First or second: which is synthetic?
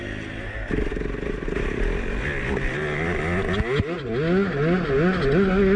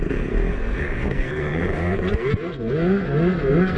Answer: second